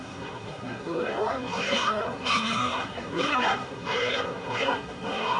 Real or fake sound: fake